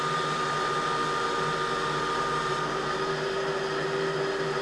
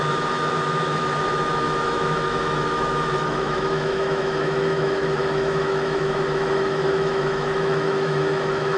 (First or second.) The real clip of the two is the first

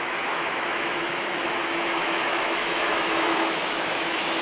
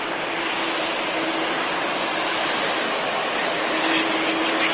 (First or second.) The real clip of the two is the second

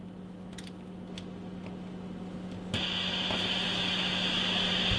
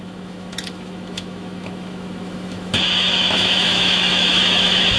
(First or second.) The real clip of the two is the first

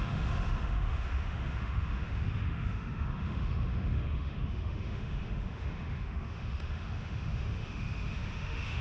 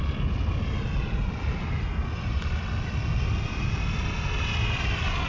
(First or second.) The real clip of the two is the second